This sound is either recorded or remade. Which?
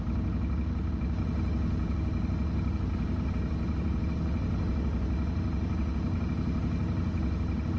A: recorded